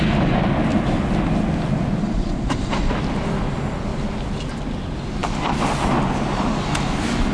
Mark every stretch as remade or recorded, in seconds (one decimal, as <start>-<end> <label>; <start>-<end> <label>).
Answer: 0.0-2.0 recorded; 2.0-2.9 remade; 2.9-7.3 recorded